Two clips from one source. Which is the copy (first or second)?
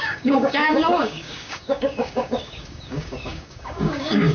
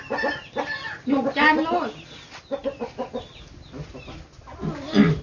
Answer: first